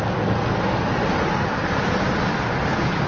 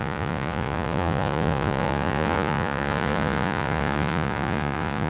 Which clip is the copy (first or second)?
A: second